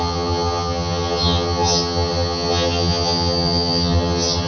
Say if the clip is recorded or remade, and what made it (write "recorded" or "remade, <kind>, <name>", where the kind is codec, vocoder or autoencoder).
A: remade, vocoder, HiFi-GAN